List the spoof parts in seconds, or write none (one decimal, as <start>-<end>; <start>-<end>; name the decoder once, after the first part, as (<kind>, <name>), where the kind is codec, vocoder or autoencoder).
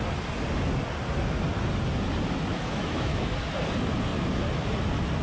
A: 2.5-3.3 (autoencoder, DAC-VAE)